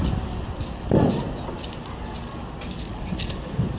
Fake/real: real